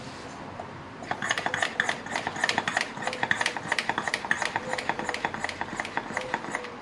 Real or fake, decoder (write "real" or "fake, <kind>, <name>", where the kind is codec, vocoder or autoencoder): real